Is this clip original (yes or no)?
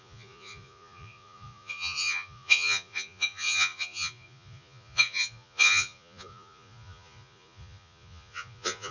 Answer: no